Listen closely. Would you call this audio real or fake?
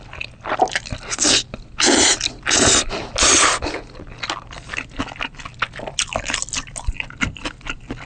real